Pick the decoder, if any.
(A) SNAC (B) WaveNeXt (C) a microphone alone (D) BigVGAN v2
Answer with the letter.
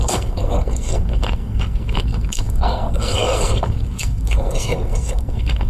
A